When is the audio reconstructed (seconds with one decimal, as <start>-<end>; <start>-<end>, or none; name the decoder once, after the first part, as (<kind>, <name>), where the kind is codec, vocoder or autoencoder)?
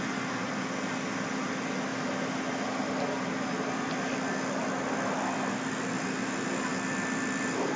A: none